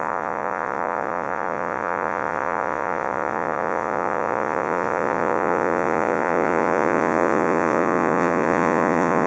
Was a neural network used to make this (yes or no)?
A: yes